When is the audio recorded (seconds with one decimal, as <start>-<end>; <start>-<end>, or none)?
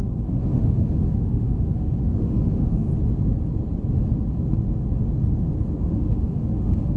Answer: 2.9-5.8